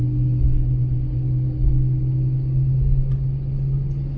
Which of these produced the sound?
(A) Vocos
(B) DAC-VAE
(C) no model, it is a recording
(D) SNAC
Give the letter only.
C